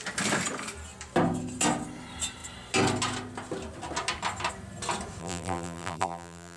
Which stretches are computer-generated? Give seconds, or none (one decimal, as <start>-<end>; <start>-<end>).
5.2-6.6